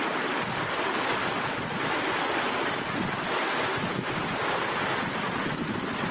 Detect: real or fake real